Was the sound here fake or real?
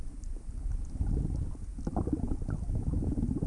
real